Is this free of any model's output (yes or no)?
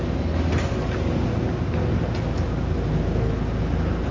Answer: yes